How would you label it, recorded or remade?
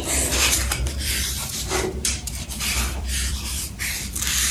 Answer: remade